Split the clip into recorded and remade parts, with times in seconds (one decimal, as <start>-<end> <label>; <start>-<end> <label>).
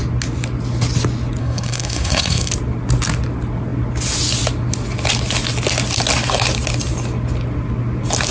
0.0-1.4 recorded; 1.4-2.5 remade; 2.5-8.3 recorded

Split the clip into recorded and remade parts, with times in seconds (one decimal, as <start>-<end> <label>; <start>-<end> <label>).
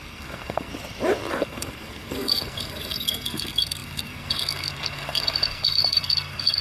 0.0-0.7 remade; 0.7-1.3 recorded; 1.3-6.6 remade